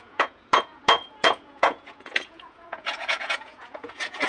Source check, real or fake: fake